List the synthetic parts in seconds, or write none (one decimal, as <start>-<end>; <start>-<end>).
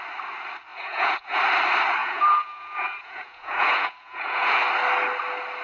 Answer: 0.7-1.4; 2.0-4.6